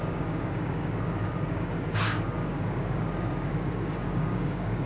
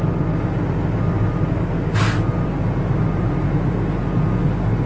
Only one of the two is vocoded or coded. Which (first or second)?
first